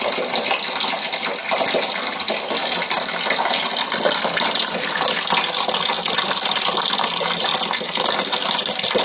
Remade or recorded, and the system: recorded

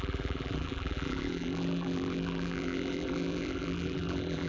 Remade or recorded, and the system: remade, vocoder, BigVGAN v2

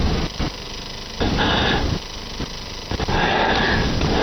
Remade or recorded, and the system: recorded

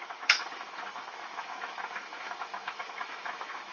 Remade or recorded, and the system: remade, autoencoder, DAC-VAE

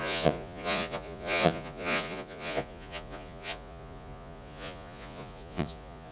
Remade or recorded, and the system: remade, vocoder, Vocos